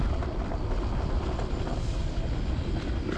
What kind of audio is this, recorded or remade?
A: recorded